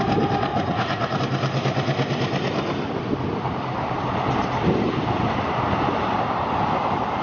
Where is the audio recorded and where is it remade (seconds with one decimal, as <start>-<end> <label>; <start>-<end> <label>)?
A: 0.0-0.5 recorded; 0.5-1.2 remade; 1.2-7.2 recorded